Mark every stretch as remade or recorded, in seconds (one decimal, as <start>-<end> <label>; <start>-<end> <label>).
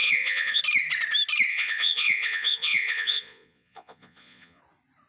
0.0-0.6 remade; 0.6-1.5 recorded; 1.5-4.6 remade; 4.6-5.1 recorded